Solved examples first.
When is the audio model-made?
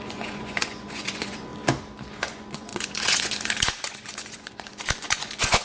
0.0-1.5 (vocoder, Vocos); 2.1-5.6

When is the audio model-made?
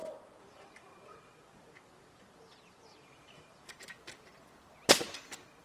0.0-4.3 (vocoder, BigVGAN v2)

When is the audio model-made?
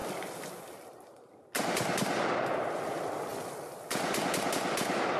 3.3-4.2 (vocoder, BigVGAN v2)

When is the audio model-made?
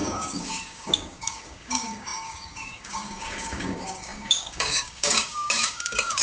0.0-6.2 (codec, DAC)